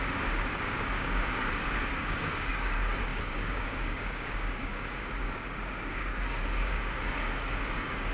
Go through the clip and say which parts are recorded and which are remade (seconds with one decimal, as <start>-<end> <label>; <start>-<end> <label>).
0.0-8.1 remade